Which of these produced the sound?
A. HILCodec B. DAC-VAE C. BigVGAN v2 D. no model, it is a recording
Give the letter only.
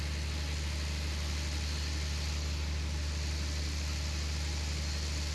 D